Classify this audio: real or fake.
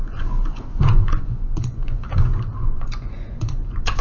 fake